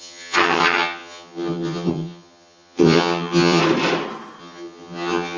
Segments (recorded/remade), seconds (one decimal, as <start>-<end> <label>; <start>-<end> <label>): 0.0-3.6 remade; 3.6-4.4 recorded; 4.4-5.4 remade